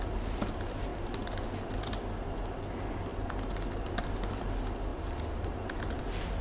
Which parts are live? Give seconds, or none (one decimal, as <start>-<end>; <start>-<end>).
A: 0.0-6.4